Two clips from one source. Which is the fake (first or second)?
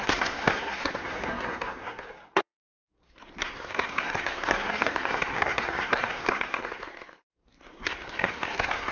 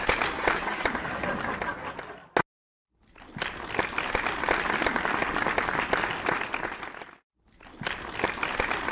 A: first